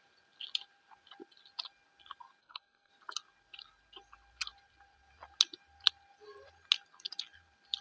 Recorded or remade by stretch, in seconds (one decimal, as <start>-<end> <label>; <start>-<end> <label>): 0.0-2.4 recorded; 2.4-2.9 remade; 2.9-7.8 recorded